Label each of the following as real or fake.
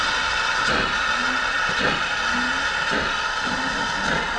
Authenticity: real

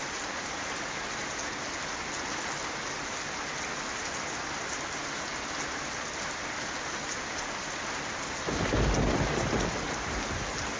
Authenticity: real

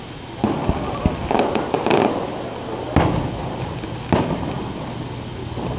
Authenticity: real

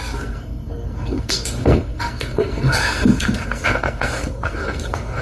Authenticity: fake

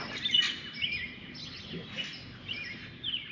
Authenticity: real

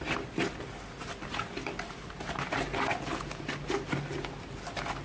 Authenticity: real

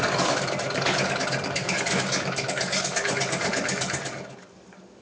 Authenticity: fake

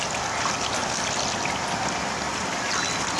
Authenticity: real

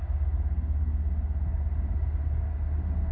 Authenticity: real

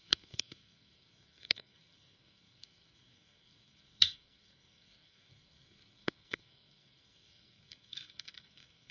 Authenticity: fake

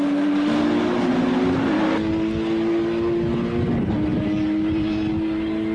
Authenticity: real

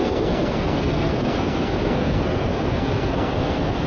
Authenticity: fake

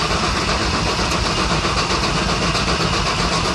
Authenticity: real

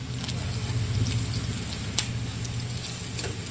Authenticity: real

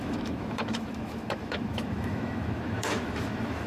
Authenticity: fake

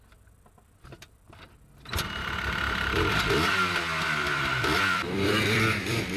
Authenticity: fake